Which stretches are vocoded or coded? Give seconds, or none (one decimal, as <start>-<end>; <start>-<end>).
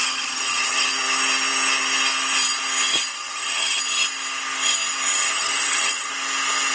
0.0-0.9; 3.1-3.8; 5.1-6.1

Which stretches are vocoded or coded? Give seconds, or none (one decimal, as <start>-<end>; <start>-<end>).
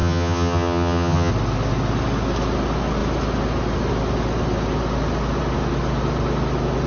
0.0-1.3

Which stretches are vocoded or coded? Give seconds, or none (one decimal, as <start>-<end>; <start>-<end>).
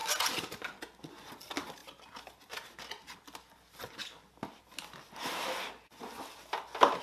none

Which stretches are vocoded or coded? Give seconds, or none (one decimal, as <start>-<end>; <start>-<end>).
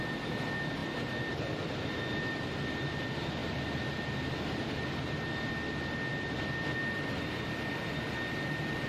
0.8-1.4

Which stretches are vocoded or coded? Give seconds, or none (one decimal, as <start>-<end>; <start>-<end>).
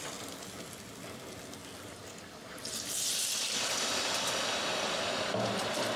1.6-5.0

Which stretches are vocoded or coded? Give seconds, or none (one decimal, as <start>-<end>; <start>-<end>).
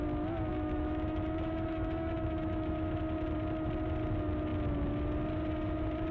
0.5-3.0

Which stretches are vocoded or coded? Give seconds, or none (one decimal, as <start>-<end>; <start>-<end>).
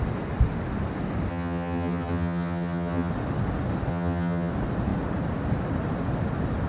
1.3-3.1; 3.9-4.5